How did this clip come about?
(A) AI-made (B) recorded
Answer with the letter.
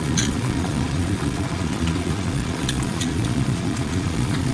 A